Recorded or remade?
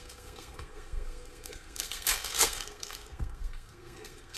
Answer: remade